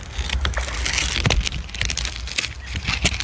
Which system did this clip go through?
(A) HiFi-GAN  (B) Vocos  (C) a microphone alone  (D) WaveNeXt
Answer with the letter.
C